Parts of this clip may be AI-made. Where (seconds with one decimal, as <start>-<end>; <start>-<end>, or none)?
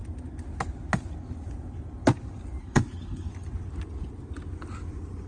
2.6-3.3